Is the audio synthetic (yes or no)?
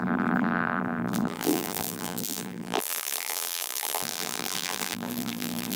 yes